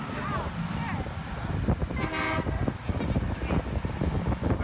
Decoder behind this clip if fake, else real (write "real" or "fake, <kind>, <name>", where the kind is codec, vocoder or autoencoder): real